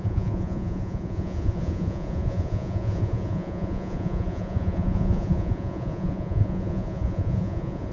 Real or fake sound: fake